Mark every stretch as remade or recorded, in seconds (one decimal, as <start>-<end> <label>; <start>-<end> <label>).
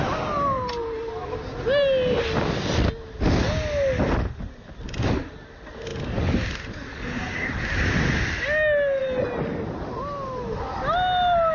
0.0-9.0 recorded; 9.0-9.8 remade; 9.8-11.5 recorded